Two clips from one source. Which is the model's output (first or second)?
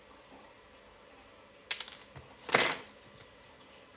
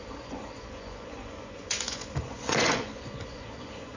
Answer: second